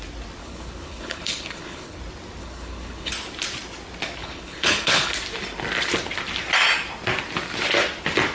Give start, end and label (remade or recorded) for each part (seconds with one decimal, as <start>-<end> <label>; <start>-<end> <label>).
0.0-0.4 recorded; 0.4-2.0 remade; 2.0-2.4 recorded; 2.4-3.1 remade; 3.1-4.2 recorded; 4.2-5.1 remade; 5.1-8.3 recorded